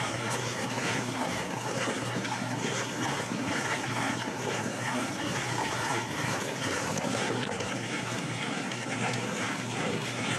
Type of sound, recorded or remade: remade